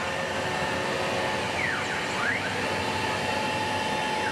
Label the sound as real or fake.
real